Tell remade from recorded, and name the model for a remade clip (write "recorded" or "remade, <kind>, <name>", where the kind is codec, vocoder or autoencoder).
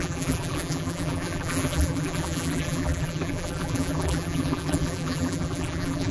remade, vocoder, BigVGAN v2